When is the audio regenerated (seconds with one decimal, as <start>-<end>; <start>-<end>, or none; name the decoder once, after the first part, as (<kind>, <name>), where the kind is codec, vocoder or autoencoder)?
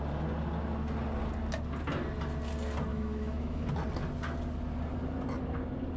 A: 2.9-3.7 (autoencoder, DAC-VAE)